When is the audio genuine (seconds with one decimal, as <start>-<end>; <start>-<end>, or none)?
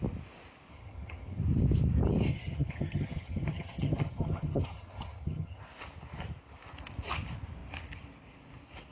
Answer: 0.0-0.7; 1.4-2.3; 5.6-8.9